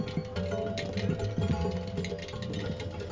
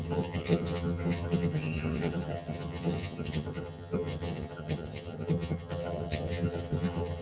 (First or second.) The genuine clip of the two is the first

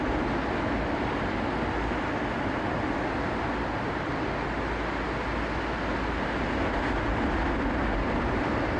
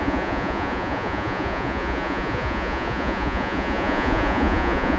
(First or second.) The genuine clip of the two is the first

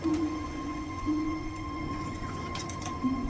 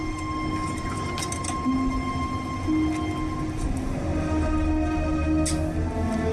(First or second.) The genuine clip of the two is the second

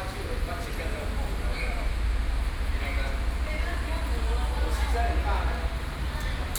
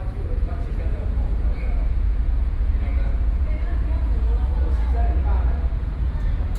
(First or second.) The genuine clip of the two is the first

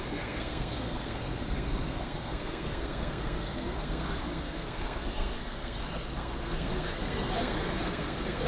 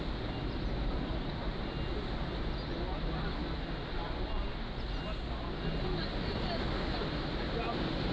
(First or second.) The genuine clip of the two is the second